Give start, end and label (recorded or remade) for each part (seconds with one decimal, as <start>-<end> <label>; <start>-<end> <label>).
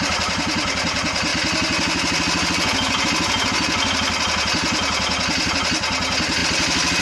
0.0-7.0 recorded